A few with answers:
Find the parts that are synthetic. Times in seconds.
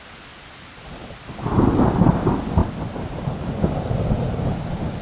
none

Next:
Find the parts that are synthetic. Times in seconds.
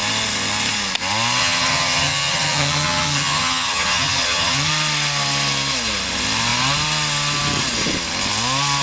1.4-4.7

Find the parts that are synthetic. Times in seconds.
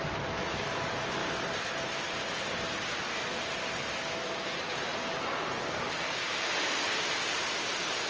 none